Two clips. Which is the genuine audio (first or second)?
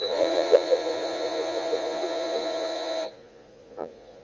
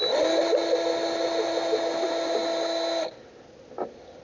second